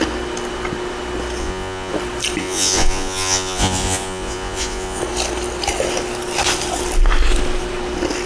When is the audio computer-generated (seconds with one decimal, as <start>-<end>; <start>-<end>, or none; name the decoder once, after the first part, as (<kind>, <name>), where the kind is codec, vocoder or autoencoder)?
1.4-1.9 (vocoder, Vocos); 2.4-5.0